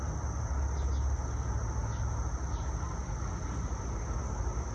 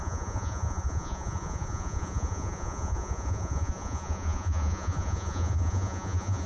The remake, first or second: second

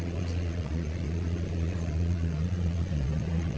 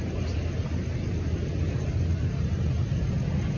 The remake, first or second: first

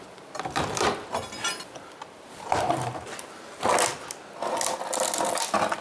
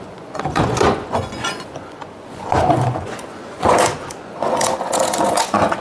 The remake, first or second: second